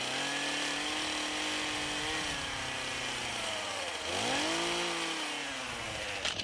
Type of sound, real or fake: real